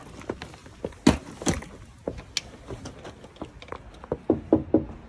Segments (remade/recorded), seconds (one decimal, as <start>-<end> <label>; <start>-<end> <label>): 0.0-5.1 recorded